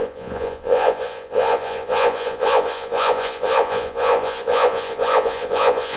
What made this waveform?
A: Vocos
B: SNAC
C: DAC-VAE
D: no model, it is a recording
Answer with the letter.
A